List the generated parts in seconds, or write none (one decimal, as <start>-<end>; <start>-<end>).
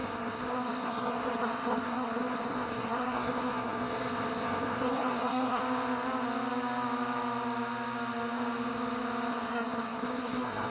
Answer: 0.0-5.6; 9.3-10.7